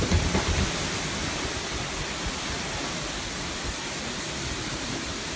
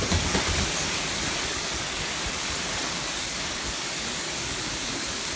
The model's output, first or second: second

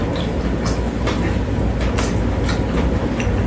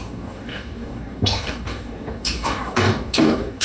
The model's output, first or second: second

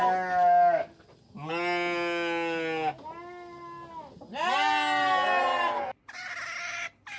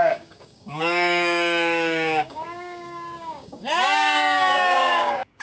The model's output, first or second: second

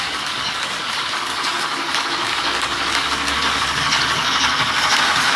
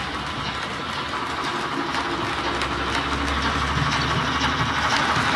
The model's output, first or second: first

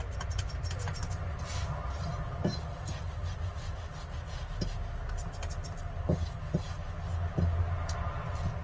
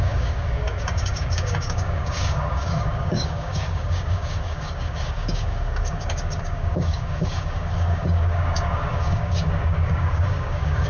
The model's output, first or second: second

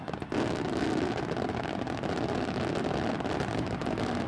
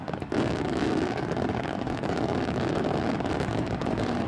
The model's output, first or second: second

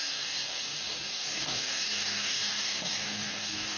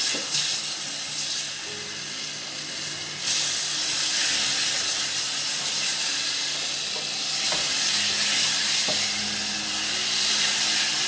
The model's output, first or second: first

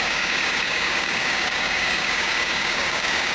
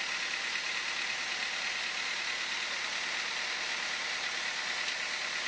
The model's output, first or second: first